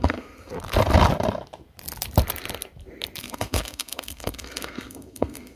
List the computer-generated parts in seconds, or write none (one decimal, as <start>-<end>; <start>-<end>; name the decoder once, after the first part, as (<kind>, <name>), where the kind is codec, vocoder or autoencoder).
0.0-0.5 (codec, SNAC); 3.2-5.6